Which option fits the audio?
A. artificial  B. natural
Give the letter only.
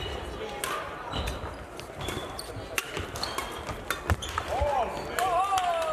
B